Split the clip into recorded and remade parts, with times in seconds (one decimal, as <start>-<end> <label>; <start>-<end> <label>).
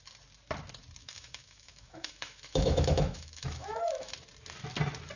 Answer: 0.0-1.0 recorded; 1.0-4.1 remade; 4.1-5.2 recorded